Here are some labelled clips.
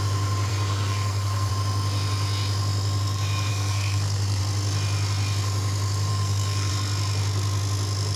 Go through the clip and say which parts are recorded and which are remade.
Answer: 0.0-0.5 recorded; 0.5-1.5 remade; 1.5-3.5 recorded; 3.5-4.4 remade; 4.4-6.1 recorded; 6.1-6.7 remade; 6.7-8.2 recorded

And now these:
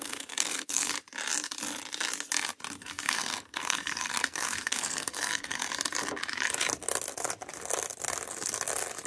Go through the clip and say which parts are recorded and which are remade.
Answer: 0.0-0.9 remade; 0.9-2.8 recorded; 2.8-5.7 remade; 5.7-9.1 recorded

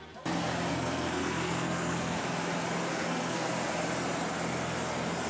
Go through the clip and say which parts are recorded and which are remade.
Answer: 0.0-0.7 recorded; 0.7-2.2 remade; 2.2-2.9 recorded; 2.9-3.5 remade; 3.5-5.3 recorded

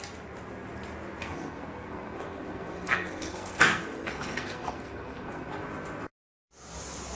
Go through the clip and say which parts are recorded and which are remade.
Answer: 0.0-1.2 recorded; 1.2-5.5 remade; 5.5-7.1 recorded

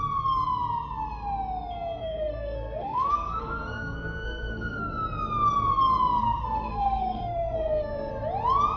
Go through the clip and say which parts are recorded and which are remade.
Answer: 0.0-2.0 recorded; 2.0-4.9 remade; 4.9-6.2 recorded; 6.2-8.1 remade; 8.1-8.8 recorded

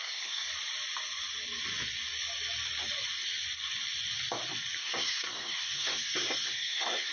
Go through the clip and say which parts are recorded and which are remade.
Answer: 0.0-0.5 remade; 0.5-4.8 recorded; 4.8-7.1 remade